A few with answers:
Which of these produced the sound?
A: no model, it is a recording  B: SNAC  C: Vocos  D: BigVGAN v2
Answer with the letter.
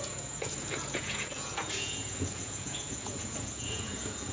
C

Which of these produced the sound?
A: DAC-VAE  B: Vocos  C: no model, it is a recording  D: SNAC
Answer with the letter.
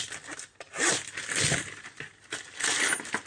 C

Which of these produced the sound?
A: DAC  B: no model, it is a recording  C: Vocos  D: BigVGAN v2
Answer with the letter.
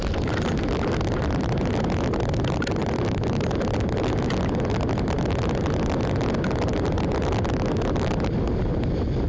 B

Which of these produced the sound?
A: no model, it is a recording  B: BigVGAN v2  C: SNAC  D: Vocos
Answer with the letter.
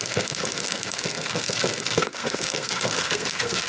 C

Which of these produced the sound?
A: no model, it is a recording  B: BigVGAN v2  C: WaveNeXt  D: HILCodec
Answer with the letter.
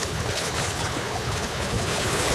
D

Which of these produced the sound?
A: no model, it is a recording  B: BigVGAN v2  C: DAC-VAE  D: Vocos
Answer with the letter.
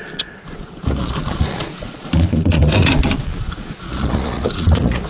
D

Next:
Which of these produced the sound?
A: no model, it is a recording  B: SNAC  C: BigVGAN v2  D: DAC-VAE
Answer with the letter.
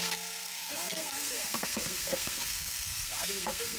B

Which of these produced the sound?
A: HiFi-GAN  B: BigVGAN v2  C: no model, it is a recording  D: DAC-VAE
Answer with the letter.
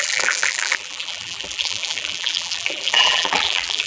B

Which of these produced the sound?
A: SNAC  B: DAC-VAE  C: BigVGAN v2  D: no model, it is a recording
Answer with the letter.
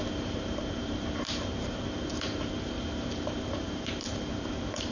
C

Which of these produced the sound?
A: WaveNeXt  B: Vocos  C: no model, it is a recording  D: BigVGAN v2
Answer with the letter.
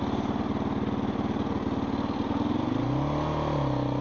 C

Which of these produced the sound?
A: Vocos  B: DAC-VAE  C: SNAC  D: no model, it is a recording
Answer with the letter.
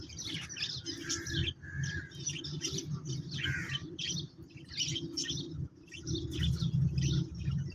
D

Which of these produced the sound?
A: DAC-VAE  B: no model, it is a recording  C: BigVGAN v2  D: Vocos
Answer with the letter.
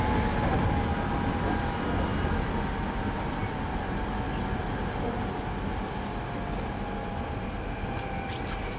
B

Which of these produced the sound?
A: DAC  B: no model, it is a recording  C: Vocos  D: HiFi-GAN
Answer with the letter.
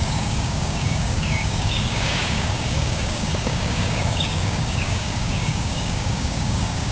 A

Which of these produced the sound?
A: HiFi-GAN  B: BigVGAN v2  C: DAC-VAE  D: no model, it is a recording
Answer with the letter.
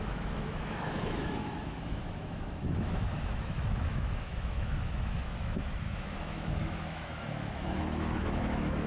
C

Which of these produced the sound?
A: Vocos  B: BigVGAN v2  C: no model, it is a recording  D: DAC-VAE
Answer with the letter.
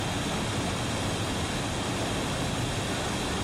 C